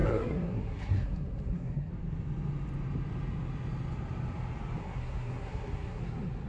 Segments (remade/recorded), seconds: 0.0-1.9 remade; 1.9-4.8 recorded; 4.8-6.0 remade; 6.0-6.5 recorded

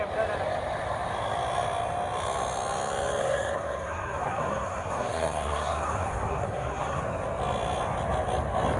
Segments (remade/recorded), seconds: 0.0-3.2 recorded; 3.2-7.0 remade; 7.0-8.8 recorded

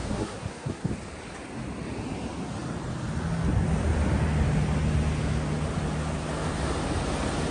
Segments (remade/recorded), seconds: 0.0-0.9 remade; 0.9-7.5 recorded

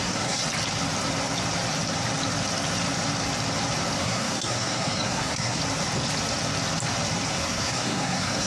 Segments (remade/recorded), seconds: 0.0-0.4 remade; 0.4-4.0 recorded; 4.0-5.6 remade; 5.6-7.3 recorded; 7.3-8.5 remade

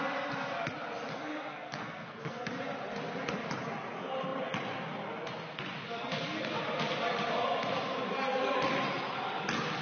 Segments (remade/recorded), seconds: 0.0-1.1 recorded; 1.1-2.5 remade; 2.5-9.8 recorded